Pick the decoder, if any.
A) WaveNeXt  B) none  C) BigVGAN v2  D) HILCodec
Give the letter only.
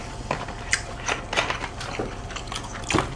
B